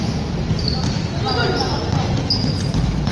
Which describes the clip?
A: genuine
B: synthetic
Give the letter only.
A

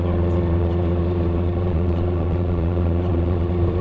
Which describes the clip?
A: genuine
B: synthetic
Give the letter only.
B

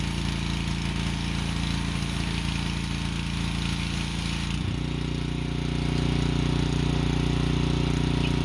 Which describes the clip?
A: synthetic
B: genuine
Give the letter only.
B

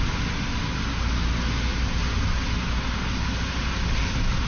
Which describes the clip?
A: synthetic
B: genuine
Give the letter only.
B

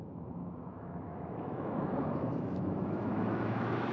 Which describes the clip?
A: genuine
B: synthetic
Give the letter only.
B